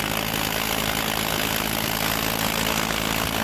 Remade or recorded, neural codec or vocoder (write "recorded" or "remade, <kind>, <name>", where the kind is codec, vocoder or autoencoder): recorded